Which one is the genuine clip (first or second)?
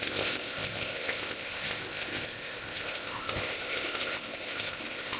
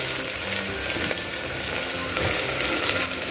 second